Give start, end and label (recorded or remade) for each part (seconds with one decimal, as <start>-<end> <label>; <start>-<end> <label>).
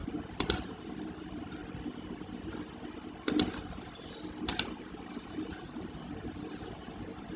0.0-0.9 remade; 0.9-4.5 recorded; 4.5-7.4 remade